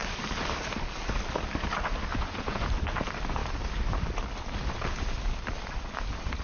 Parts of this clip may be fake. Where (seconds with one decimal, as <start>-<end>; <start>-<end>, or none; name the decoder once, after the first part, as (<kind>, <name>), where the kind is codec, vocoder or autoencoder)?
2.1-2.7 (vocoder, Vocos)